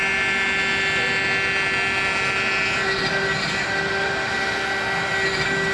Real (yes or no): yes